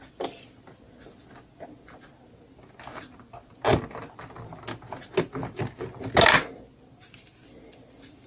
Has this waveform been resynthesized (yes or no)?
no